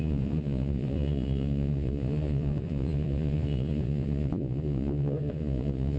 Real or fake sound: fake